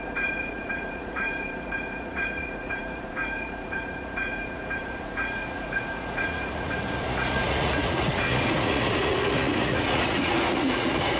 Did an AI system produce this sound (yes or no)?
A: yes